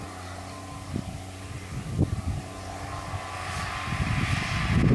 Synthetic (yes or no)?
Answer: no